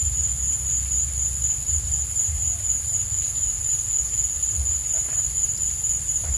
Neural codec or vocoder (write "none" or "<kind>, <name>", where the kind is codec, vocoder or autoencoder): none